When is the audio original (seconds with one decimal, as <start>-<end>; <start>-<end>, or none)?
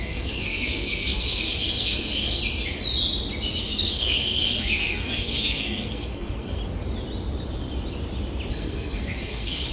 2.4-3.6; 6.6-8.5